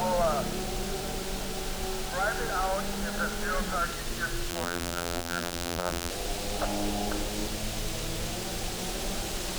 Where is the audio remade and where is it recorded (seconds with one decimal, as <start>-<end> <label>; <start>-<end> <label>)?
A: 0.0-4.5 recorded; 4.5-6.1 remade; 6.1-9.6 recorded

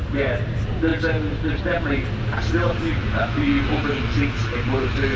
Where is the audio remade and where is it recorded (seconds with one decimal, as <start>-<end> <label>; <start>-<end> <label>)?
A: 0.0-5.2 recorded

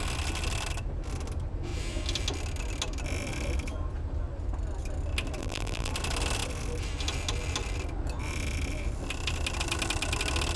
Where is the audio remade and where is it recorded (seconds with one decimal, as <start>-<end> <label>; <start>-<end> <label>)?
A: 0.0-5.4 recorded; 5.4-5.9 remade; 5.9-10.6 recorded

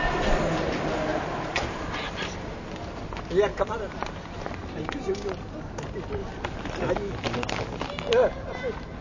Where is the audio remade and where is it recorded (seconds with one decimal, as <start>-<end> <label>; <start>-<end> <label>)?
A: 0.0-1.1 recorded; 1.1-1.7 remade; 1.7-3.5 recorded; 3.5-5.1 remade; 5.1-6.2 recorded; 6.2-6.9 remade; 6.9-9.0 recorded

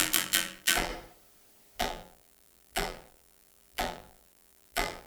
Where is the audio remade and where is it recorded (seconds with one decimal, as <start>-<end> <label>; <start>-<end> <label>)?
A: 0.0-0.9 remade; 0.9-1.8 recorded; 1.8-5.1 remade

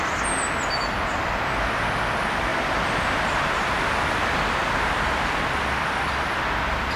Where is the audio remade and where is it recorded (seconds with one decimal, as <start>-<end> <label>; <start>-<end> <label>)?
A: 0.0-7.0 recorded

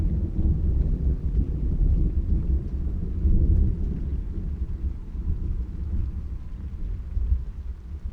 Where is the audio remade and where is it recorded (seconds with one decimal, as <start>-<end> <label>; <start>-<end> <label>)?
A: 0.0-0.7 recorded; 0.7-2.1 remade; 2.1-8.1 recorded

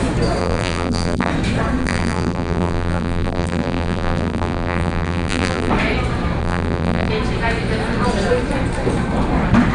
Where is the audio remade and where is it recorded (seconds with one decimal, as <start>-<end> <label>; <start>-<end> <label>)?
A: 0.0-0.4 recorded; 0.4-1.3 remade; 1.3-1.8 recorded; 1.8-5.7 remade; 5.7-6.4 recorded; 6.4-7.1 remade; 7.1-9.7 recorded